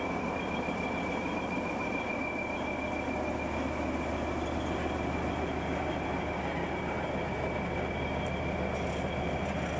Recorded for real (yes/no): yes